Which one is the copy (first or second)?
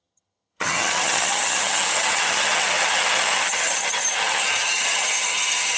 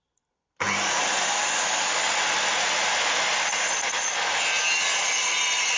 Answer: first